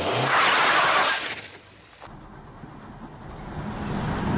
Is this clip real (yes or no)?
yes